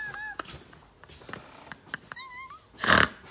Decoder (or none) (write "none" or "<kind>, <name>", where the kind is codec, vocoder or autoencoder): none